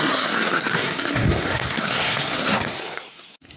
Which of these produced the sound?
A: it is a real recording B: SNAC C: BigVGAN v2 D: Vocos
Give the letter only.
B